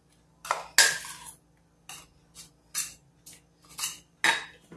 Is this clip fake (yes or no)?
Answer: no